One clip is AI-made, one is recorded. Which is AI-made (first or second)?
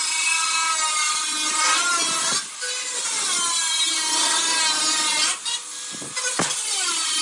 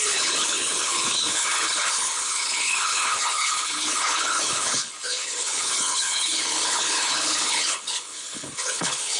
second